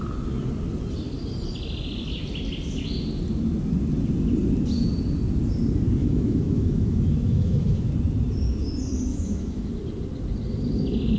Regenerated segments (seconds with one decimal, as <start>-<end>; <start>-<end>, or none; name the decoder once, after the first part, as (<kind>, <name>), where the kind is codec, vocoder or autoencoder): 6.0-7.9 (autoencoder, DAC-VAE); 9.1-9.7